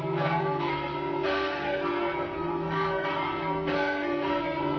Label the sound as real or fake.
fake